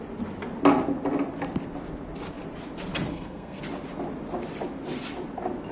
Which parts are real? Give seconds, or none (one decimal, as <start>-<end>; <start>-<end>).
0.0-3.1; 3.6-5.7